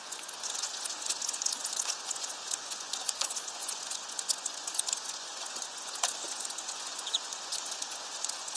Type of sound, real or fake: fake